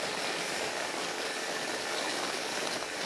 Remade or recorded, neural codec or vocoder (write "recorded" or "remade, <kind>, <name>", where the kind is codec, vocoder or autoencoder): remade, codec, DAC